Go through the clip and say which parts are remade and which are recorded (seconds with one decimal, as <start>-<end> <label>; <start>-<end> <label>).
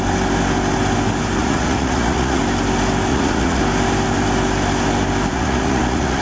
0.0-1.4 recorded; 1.4-2.4 remade; 2.4-3.1 recorded; 3.1-3.6 remade; 3.6-5.3 recorded; 5.3-6.2 remade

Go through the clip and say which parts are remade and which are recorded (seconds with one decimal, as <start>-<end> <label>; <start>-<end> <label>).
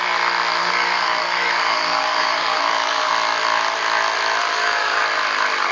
0.0-0.6 recorded; 0.6-3.1 remade; 3.1-4.4 recorded; 4.4-5.0 remade; 5.0-5.7 recorded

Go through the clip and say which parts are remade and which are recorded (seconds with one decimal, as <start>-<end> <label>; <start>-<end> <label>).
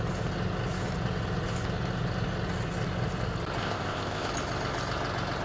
0.0-3.6 recorded; 3.6-4.3 remade; 4.3-5.4 recorded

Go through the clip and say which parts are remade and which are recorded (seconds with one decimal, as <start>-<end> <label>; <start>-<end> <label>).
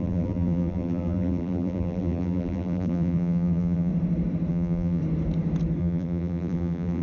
0.0-3.9 remade; 3.9-4.5 recorded; 4.5-5.0 remade; 5.0-5.8 recorded; 5.8-7.0 remade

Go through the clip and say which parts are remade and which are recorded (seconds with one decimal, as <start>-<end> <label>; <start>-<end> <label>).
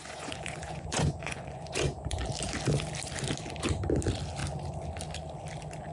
0.0-2.2 remade; 2.2-5.9 recorded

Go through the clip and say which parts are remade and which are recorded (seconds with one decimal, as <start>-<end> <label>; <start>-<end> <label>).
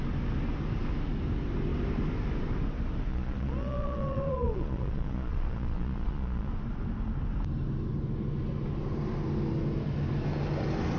0.0-3.1 recorded; 3.1-6.5 remade; 6.5-11.0 recorded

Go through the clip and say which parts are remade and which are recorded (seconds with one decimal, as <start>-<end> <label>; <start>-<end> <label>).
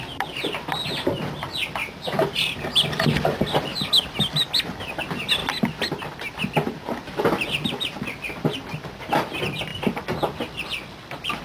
0.0-1.8 recorded; 1.8-2.6 remade; 2.6-11.4 recorded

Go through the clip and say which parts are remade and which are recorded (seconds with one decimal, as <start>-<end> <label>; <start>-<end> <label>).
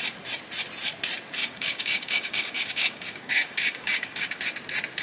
0.0-1.4 recorded; 1.4-4.4 remade; 4.4-5.0 recorded